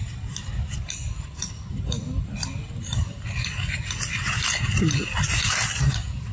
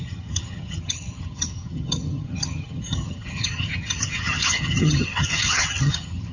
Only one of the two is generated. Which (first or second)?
second